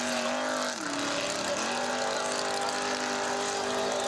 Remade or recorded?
recorded